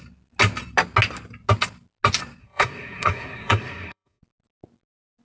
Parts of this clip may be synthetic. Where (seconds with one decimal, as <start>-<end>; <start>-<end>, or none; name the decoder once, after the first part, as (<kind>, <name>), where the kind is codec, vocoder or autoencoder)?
2.4-4.2 (codec, SNAC)